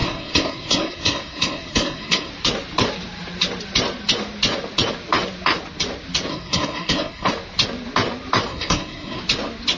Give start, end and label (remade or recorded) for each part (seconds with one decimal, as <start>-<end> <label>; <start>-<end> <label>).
0.0-2.3 remade; 2.3-6.3 recorded; 6.3-7.3 remade; 7.3-8.5 recorded; 8.5-9.2 remade; 9.2-9.8 recorded